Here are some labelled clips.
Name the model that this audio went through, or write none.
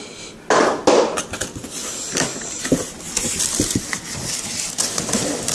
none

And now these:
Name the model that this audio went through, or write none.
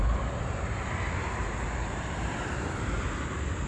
vocoder, BigVGAN v2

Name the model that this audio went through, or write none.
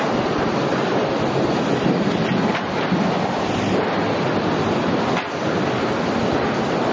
none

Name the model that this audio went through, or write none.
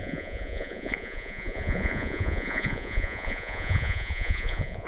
vocoder, Vocos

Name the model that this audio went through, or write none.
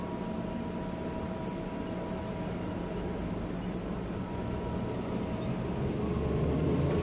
none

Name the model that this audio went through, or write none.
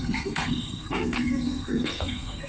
codec, SNAC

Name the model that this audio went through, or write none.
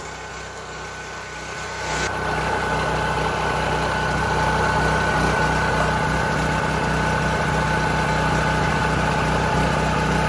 none